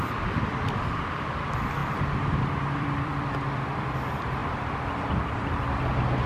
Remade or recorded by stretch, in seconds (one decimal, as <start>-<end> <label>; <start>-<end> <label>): 0.0-1.8 recorded; 1.8-3.5 remade; 3.5-6.3 recorded